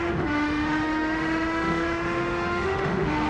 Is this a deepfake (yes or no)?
yes